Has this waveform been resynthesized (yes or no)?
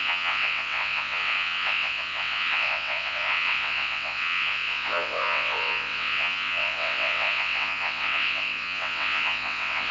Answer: yes